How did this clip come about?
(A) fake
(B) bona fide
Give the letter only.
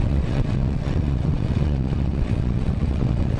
A